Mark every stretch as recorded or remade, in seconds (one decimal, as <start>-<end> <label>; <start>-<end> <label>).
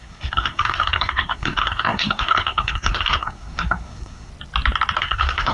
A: 0.0-4.3 remade; 4.3-5.0 recorded; 5.0-5.5 remade